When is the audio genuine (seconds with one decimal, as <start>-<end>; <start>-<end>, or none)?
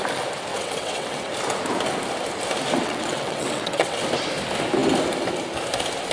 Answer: 0.0-0.5; 1.3-2.8; 4.0-6.1